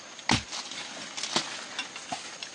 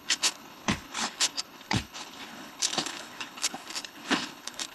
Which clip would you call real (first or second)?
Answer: first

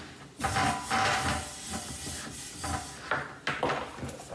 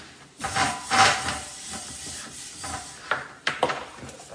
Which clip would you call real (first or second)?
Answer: first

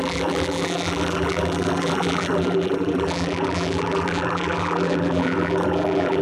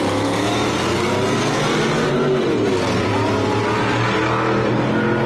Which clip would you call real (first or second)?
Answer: second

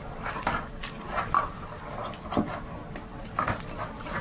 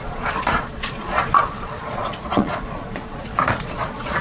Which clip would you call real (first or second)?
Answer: first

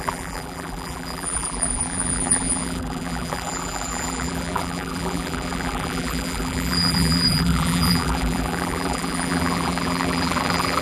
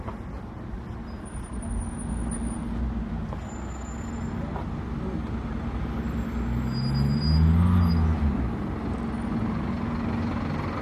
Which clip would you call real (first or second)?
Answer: second